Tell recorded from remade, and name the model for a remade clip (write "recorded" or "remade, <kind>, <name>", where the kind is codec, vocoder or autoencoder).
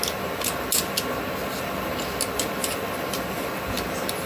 recorded